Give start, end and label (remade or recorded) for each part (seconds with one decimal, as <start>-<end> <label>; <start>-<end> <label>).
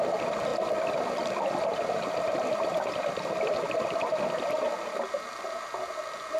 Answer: 0.0-6.4 recorded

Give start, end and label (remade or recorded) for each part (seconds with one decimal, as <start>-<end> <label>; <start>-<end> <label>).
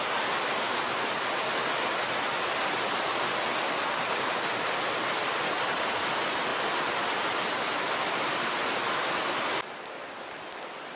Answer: 0.0-11.0 recorded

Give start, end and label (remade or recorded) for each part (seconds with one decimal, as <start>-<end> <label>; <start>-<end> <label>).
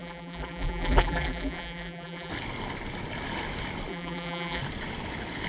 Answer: 0.0-2.3 remade; 2.3-3.9 recorded; 3.9-4.6 remade; 4.6-5.5 recorded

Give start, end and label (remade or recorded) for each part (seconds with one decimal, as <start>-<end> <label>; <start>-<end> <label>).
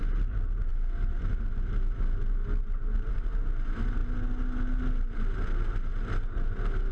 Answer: 0.0-5.9 recorded; 5.9-6.9 remade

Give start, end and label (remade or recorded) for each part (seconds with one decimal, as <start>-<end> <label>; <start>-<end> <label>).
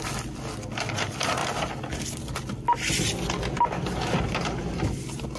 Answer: 0.0-5.4 recorded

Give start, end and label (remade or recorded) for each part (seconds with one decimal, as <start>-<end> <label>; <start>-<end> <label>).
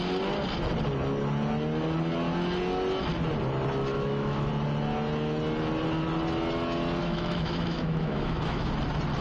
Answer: 0.0-3.9 recorded; 3.9-4.5 remade; 4.5-7.0 recorded; 7.0-8.7 remade; 8.7-9.2 recorded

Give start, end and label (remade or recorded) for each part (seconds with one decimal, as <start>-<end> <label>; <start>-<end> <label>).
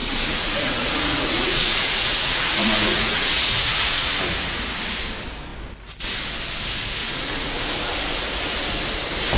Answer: 0.0-4.2 remade; 4.2-7.0 recorded; 7.0-7.6 remade; 7.6-9.4 recorded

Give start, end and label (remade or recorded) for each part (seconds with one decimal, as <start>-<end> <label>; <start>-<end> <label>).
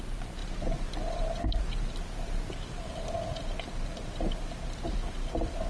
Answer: 0.0-5.7 recorded